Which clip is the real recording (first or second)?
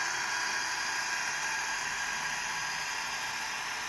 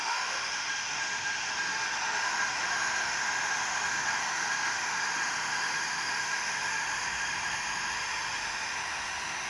first